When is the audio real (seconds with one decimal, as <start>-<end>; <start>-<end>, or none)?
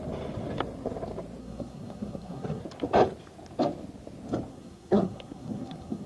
0.0-1.4; 2.6-4.5